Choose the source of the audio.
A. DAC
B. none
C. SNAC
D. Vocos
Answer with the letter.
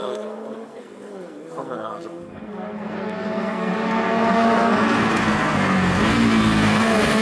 C